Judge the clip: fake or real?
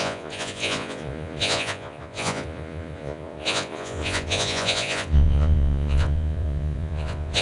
fake